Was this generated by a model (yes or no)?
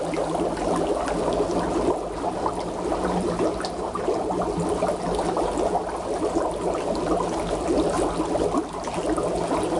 no